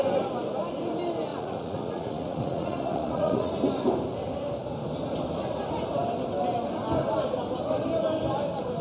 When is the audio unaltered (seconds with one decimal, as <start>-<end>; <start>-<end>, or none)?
0.0-1.3; 3.5-8.8